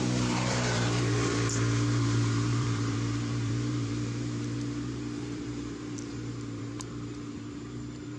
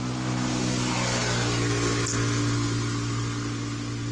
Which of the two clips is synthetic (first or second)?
first